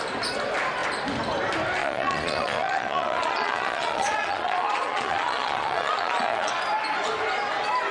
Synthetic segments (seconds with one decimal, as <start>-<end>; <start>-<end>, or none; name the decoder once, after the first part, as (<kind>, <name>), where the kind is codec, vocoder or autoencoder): 1.8-6.5 (vocoder, Vocos)